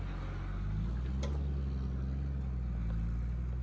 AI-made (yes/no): no